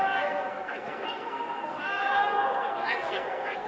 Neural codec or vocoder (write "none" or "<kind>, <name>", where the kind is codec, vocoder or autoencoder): codec, SNAC